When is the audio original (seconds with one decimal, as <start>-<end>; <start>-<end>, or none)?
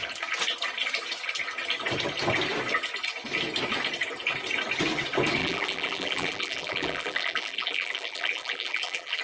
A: 0.0-5.4